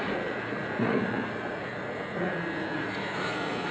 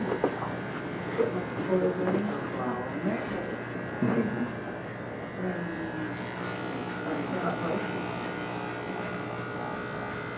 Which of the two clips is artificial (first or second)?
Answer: first